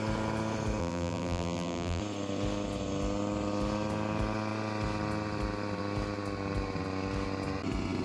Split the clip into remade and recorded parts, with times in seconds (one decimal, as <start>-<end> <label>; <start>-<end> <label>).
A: 0.0-0.8 recorded; 0.8-2.0 remade; 2.0-8.0 recorded